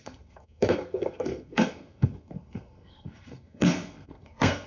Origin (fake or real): fake